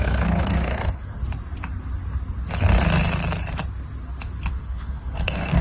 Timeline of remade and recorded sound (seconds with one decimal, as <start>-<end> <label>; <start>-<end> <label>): 0.0-1.2 remade; 1.2-4.5 recorded; 4.5-5.6 remade